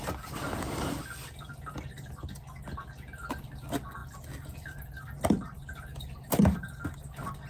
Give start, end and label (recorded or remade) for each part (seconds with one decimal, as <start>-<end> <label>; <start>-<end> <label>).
0.0-7.5 recorded